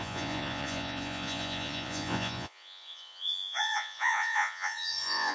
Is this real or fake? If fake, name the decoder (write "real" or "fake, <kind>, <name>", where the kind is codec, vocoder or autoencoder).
fake, vocoder, Vocos